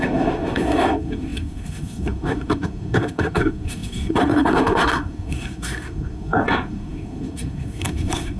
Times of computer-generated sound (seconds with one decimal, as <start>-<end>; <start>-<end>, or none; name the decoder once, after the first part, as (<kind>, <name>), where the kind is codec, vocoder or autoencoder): 0.0-8.4 (codec, SNAC)